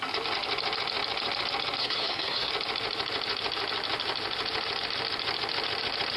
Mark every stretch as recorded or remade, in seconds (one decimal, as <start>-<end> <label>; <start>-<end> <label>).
0.0-1.8 recorded; 1.8-2.5 remade; 2.5-6.2 recorded